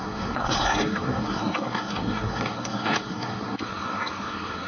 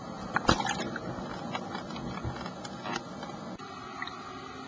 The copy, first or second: first